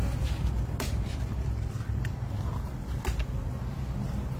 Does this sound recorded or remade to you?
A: recorded